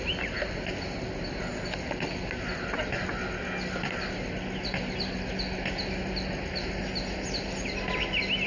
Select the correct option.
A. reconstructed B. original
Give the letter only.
B